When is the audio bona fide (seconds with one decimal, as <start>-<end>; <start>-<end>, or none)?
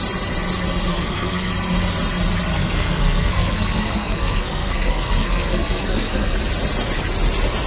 0.0-0.9; 1.5-2.5; 6.4-7.7